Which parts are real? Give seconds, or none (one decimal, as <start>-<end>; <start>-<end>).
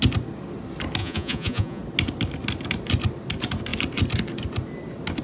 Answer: 0.0-1.0; 1.8-5.2